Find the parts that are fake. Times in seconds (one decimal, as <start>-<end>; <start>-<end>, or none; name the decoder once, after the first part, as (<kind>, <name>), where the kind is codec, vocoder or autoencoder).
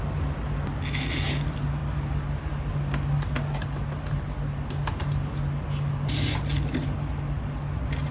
none